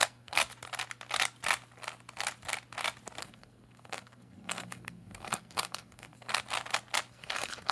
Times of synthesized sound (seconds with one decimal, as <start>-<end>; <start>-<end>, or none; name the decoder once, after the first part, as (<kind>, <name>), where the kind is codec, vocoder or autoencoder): 0.0-0.4 (codec, SNAC); 3.2-6.3; 7.1-7.7